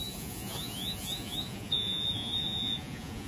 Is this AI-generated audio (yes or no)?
yes